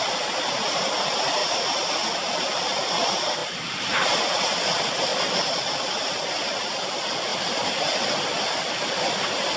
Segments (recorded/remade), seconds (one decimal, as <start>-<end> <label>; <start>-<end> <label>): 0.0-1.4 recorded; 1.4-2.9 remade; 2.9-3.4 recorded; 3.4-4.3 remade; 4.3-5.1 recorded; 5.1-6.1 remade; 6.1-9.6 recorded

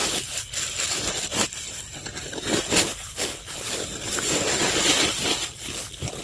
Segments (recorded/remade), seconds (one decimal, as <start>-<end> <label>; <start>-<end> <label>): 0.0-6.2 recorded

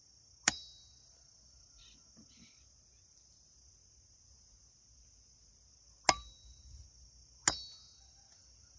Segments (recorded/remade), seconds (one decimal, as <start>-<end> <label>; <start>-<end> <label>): 0.0-8.8 recorded

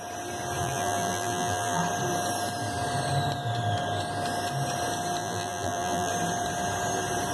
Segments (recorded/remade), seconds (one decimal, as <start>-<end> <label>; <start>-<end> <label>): 0.0-0.6 recorded; 0.6-1.8 remade; 1.8-5.2 recorded; 5.2-6.1 remade; 6.1-7.3 recorded

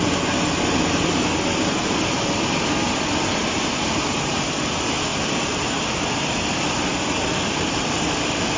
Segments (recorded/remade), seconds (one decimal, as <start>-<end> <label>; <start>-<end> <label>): 0.0-3.4 recorded; 3.4-4.3 remade; 4.3-8.6 recorded